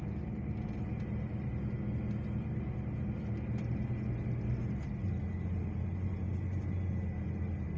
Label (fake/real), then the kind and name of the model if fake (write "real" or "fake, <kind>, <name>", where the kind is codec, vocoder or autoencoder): real